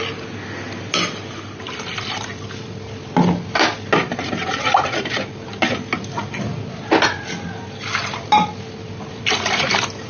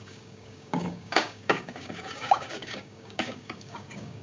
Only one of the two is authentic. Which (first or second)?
first